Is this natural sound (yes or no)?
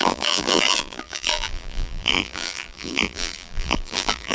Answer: no